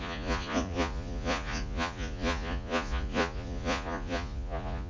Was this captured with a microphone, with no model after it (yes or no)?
no